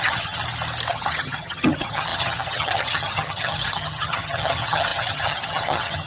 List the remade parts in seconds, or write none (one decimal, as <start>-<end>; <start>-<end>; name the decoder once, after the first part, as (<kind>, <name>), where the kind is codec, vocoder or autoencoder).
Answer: 0.0-0.4 (vocoder, HiFi-GAN); 0.9-6.1